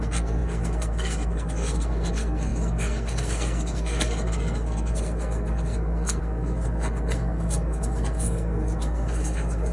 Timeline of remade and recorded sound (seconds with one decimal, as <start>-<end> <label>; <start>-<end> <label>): 0.0-9.7 remade